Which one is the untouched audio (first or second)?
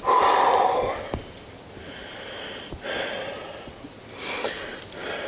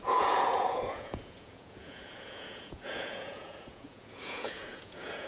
first